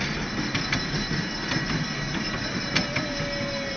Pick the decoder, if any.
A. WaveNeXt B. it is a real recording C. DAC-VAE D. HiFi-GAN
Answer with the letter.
B